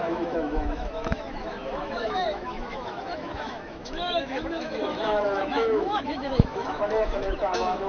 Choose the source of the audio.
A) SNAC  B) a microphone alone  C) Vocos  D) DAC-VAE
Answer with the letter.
D